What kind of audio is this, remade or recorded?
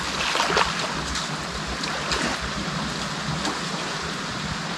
recorded